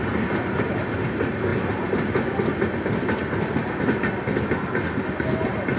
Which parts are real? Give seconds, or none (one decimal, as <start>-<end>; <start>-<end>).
0.0-5.8